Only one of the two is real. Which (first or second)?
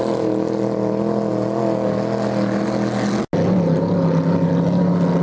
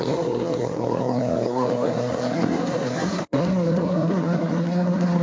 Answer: first